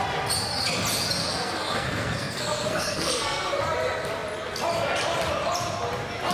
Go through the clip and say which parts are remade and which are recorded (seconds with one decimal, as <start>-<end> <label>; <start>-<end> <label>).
0.0-1.2 recorded; 1.2-3.6 remade; 3.6-6.3 recorded